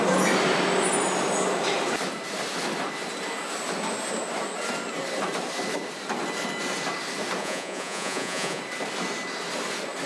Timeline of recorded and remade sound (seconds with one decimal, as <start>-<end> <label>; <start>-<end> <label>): 0.0-7.4 recorded; 7.4-8.6 remade; 8.6-10.1 recorded